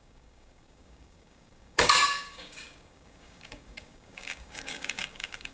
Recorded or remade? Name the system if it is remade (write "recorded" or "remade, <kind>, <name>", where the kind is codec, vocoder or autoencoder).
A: remade, codec, DAC